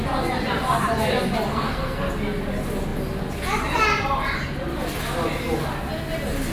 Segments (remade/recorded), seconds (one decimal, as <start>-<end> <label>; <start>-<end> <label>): 0.0-1.5 recorded; 1.5-2.1 remade; 2.1-6.5 recorded